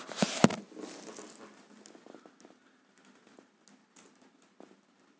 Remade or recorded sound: recorded